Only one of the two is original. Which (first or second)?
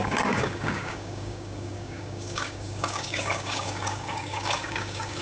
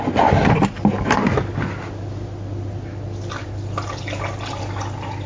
second